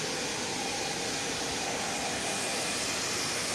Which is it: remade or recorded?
recorded